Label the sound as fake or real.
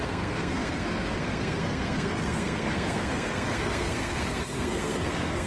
fake